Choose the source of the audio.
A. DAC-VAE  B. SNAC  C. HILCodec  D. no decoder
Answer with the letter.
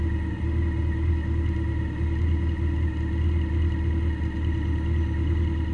D